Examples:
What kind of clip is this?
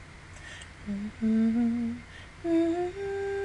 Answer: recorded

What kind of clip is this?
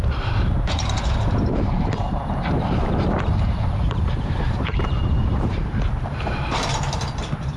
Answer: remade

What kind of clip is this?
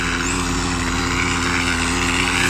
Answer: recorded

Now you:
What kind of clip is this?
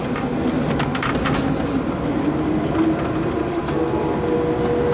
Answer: recorded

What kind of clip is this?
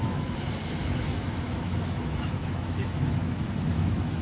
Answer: remade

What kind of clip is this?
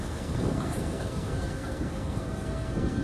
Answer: remade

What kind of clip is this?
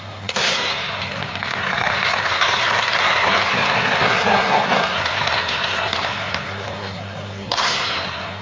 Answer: remade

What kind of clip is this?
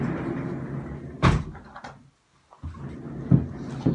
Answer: recorded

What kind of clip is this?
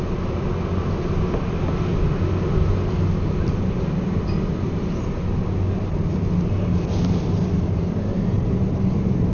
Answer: recorded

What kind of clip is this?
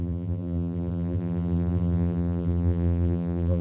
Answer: remade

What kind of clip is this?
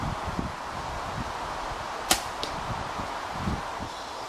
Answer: recorded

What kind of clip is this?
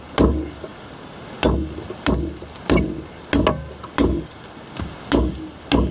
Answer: recorded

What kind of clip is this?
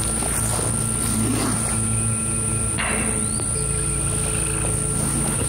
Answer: recorded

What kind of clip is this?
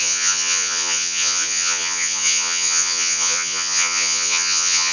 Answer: remade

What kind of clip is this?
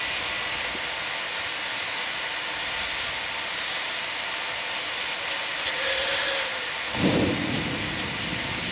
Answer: recorded